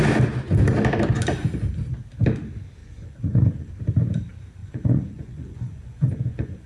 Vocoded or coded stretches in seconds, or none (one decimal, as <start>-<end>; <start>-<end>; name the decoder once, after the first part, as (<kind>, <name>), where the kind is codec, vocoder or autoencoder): 2.8-3.7 (vocoder, Vocos); 4.6-6.7

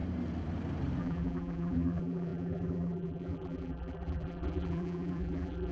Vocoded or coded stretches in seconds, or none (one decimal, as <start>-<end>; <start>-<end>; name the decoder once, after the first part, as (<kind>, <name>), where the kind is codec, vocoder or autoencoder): 1.0-5.7 (vocoder, BigVGAN v2)

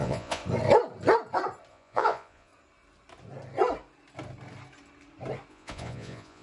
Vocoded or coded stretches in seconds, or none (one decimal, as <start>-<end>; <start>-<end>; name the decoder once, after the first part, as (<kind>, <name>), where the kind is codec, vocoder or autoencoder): 0.0-0.4 (vocoder, Vocos); 1.7-2.5; 5.5-6.4

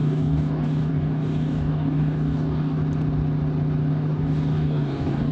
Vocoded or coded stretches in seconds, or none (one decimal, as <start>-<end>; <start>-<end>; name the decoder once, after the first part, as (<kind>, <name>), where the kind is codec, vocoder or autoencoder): 0.0-2.8 (codec, DAC); 3.9-5.3

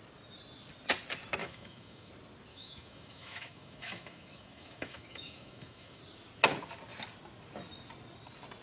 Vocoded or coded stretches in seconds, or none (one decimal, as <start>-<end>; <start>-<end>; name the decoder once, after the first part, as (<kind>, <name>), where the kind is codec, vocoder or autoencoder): 1.4-2.1 (autoencoder, DAC-VAE); 2.5-6.0